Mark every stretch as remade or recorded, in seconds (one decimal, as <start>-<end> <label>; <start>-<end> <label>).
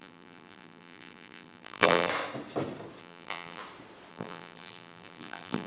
0.0-2.1 remade; 2.1-3.0 recorded; 3.0-3.6 remade; 3.6-4.1 recorded; 4.1-5.7 remade